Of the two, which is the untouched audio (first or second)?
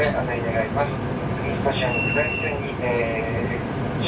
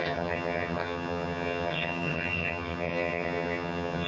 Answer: first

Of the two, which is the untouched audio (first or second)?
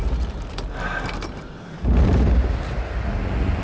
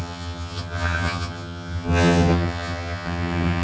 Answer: first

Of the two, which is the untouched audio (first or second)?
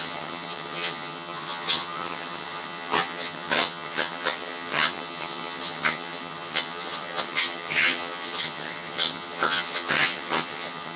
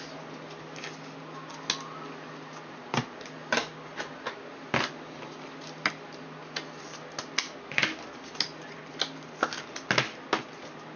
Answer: second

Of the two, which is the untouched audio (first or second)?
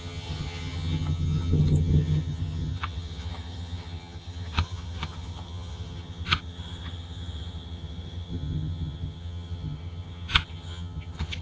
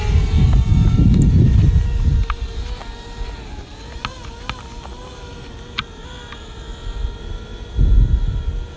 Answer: second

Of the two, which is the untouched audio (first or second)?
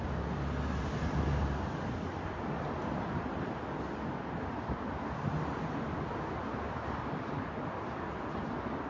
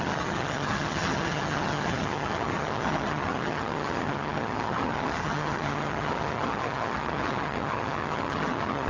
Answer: first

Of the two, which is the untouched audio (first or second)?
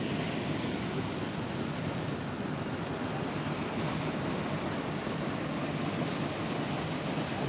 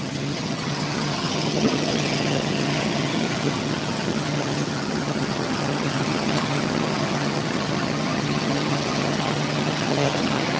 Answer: first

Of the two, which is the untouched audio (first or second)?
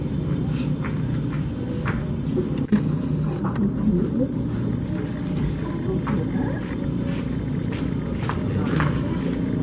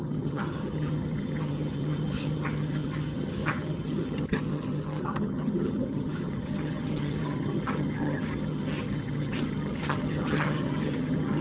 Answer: first